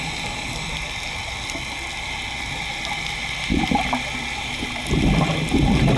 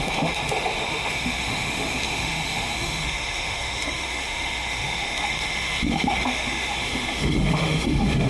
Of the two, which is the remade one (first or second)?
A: second